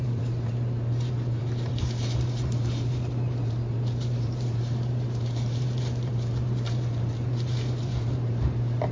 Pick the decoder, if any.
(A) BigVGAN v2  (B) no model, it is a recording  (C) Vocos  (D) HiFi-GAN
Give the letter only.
A